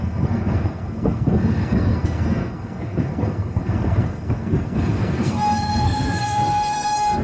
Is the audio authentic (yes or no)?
no